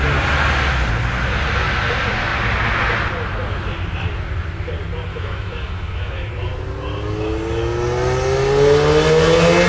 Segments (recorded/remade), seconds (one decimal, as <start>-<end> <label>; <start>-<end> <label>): 0.0-5.1 recorded; 5.1-6.3 remade; 6.3-9.7 recorded